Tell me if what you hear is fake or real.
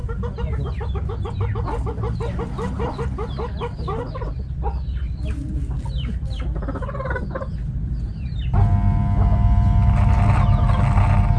real